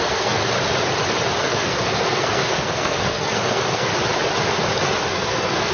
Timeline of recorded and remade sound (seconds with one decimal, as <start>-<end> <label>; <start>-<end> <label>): 0.0-0.4 remade; 0.4-1.4 recorded; 1.4-3.9 remade; 3.9-5.1 recorded; 5.1-5.7 remade